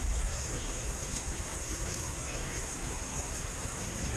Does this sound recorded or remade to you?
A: remade